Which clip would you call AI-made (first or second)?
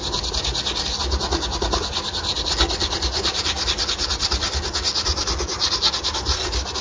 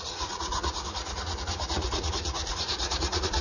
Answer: second